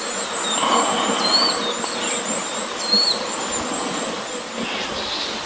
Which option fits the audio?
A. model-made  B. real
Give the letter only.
B